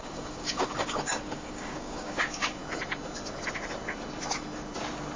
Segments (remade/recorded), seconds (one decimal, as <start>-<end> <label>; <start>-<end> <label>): 0.0-2.6 remade; 2.6-5.2 recorded